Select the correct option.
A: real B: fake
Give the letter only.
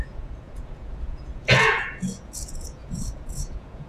B